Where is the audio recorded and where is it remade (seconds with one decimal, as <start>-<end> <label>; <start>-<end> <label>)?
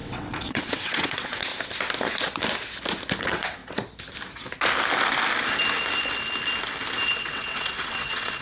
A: 0.0-1.5 remade; 1.5-3.2 recorded; 3.2-3.6 remade; 3.6-7.2 recorded; 7.2-8.4 remade